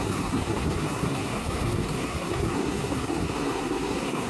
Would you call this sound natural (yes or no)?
no